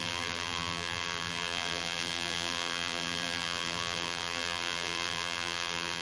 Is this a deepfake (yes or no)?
yes